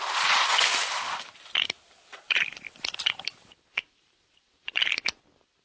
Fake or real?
fake